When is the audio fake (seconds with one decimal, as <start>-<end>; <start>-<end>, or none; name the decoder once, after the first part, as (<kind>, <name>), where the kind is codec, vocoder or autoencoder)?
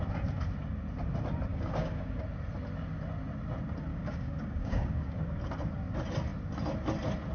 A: 1.5-2.2 (codec, DAC); 3.9-5.4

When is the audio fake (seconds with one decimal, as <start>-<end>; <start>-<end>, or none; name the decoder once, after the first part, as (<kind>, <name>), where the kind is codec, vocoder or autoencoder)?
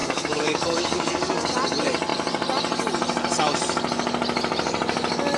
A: 0.0-1.5 (codec, DAC)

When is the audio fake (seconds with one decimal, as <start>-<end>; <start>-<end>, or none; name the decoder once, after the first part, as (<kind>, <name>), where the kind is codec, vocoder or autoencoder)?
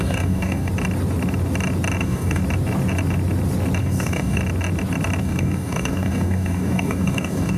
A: 0.0-0.7 (codec, DAC); 2.0-2.4; 3.8-4.4; 5.2-7.6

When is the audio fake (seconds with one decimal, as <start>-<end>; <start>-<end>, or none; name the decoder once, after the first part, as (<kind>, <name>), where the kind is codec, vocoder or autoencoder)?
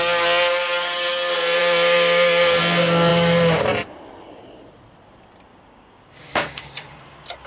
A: 1.6-2.6 (codec, DAC); 5.5-6.6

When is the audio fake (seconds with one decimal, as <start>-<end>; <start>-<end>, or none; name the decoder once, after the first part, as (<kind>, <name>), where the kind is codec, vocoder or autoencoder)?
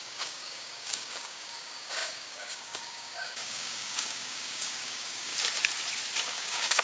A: 0.0-5.3 (codec, DAC); 6.2-6.8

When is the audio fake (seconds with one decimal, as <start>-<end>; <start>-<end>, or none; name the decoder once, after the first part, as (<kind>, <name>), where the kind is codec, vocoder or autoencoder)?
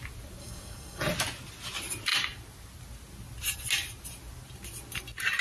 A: 0.4-1.0 (codec, DAC)